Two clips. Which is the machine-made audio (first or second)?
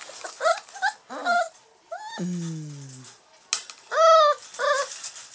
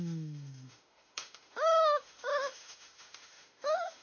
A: second